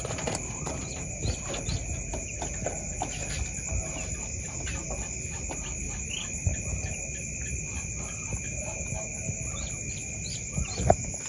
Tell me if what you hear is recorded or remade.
recorded